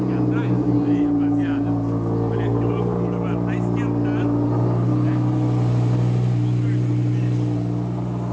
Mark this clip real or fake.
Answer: real